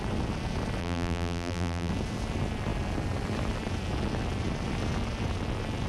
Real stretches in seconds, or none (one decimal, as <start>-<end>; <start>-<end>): 0.0-0.8; 1.9-5.9